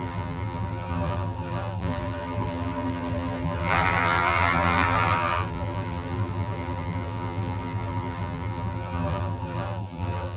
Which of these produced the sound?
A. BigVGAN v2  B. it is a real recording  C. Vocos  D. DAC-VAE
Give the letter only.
A